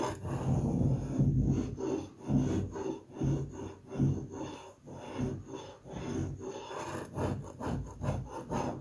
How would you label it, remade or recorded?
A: recorded